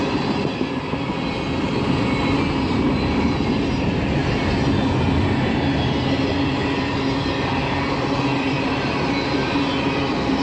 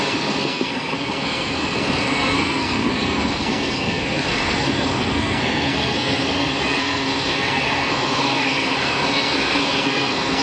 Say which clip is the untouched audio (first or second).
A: first